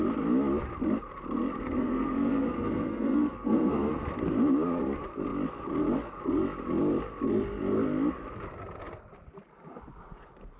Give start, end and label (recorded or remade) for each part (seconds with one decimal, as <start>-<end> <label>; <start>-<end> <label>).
0.0-1.6 recorded; 1.6-3.9 remade; 3.9-10.6 recorded